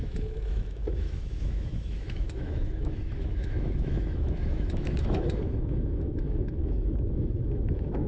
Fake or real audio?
fake